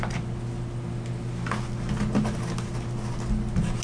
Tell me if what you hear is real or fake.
real